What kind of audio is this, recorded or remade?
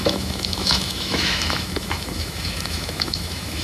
remade